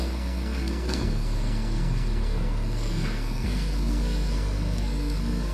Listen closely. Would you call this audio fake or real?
fake